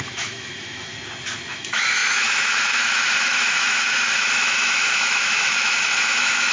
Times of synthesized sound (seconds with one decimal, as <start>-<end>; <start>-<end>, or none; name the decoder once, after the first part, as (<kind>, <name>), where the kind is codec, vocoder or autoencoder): 0.0-0.9 (autoencoder, DAC-VAE); 1.5-6.5